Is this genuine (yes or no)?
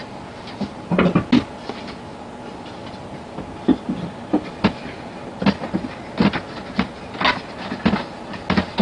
yes